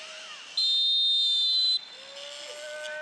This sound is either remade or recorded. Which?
recorded